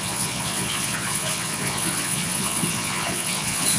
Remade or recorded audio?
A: remade